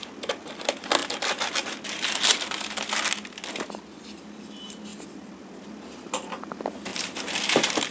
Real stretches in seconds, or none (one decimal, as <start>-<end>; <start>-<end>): 0.0-1.0; 1.5-6.9